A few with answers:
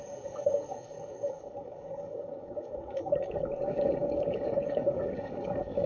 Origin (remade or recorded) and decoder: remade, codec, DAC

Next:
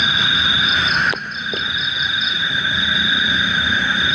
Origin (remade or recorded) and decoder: recorded